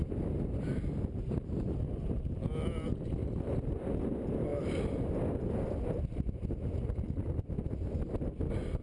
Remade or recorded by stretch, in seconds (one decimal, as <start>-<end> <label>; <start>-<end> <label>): 0.0-4.5 recorded; 4.5-5.1 remade; 5.1-8.8 recorded